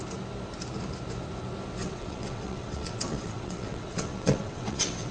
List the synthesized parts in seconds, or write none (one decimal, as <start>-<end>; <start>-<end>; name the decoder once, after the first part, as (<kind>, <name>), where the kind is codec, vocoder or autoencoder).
1.8-5.1 (vocoder, WaveNeXt)